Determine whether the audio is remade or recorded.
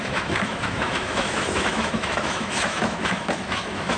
remade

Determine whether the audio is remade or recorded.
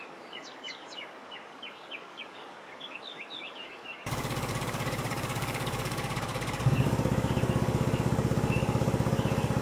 remade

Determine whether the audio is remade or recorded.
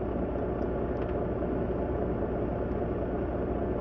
recorded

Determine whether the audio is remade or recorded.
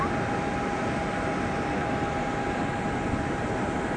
recorded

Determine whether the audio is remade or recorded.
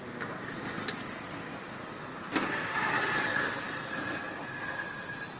recorded